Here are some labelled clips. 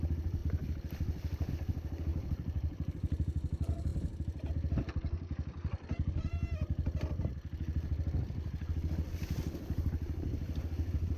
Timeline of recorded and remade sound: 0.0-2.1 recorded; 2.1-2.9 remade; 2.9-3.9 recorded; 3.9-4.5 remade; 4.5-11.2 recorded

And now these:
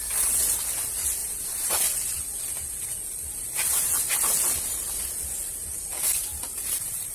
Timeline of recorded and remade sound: 0.0-7.1 recorded

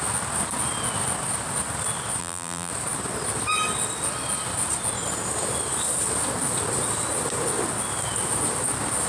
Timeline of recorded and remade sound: 0.0-2.2 recorded; 2.2-2.7 remade; 2.7-9.1 recorded

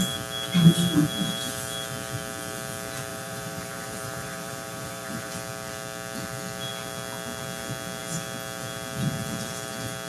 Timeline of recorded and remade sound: 0.0-3.1 recorded; 3.1-5.3 remade; 5.3-10.1 recorded

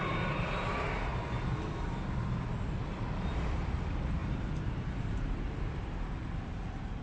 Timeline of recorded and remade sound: 0.0-1.1 remade; 1.1-2.9 recorded; 2.9-4.2 remade; 4.2-5.8 recorded; 5.8-7.0 remade

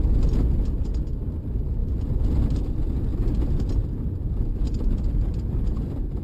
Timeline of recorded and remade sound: 0.0-0.9 remade; 0.9-1.4 recorded; 1.4-6.2 remade

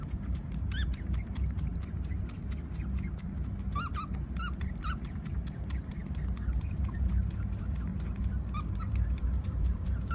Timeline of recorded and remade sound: 0.0-1.7 remade; 1.7-4.6 recorded; 4.6-6.0 remade; 6.0-6.9 recorded; 6.9-7.9 remade; 7.9-8.8 recorded; 8.8-10.1 remade

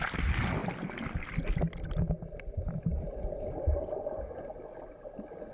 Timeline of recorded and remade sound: 0.0-5.5 recorded